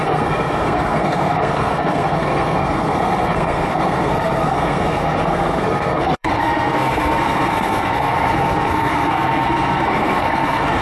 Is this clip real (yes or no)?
no